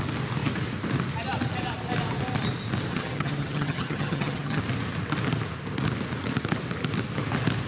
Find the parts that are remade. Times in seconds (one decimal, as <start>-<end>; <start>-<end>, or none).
2.9-4.6